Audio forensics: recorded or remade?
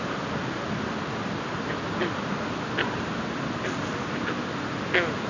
recorded